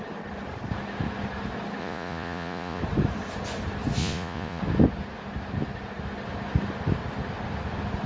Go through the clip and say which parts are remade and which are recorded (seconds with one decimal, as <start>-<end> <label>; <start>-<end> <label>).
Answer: 0.0-1.8 recorded; 1.8-2.8 remade; 2.8-4.0 recorded; 4.0-4.6 remade; 4.6-8.1 recorded

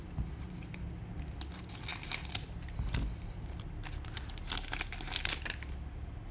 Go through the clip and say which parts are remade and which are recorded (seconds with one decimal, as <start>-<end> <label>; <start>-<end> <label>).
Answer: 0.0-6.3 recorded

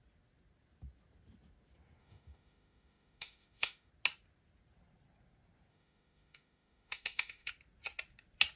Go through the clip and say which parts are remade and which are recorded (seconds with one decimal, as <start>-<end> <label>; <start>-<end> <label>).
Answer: 0.0-2.0 recorded; 2.0-3.9 remade; 3.9-5.7 recorded; 5.7-7.5 remade; 7.5-8.6 recorded

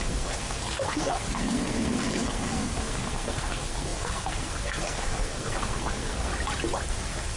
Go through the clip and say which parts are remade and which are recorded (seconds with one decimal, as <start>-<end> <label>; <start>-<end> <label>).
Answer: 0.0-6.3 remade; 6.3-6.9 recorded; 6.9-7.4 remade

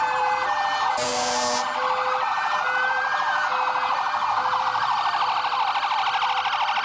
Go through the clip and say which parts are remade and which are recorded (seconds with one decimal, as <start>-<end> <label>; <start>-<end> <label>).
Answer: 0.0-1.1 remade; 1.1-2.9 recorded; 2.9-3.4 remade; 3.4-4.6 recorded; 4.6-6.8 remade

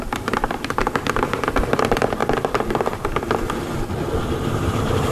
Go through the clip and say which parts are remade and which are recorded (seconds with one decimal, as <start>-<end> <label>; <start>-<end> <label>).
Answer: 0.0-2.2 remade; 2.2-4.2 recorded; 4.2-5.1 remade

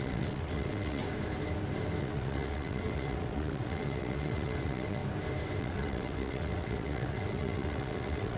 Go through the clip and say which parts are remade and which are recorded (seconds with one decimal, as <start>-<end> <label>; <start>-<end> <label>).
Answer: 0.0-1.0 remade; 1.0-2.0 recorded; 2.0-5.0 remade; 5.0-5.6 recorded; 5.6-8.4 remade

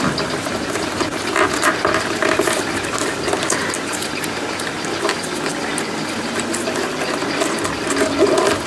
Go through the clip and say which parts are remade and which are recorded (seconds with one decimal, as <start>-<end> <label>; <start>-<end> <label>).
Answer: 0.0-1.1 remade; 1.1-5.0 recorded; 5.0-5.7 remade; 5.7-8.7 recorded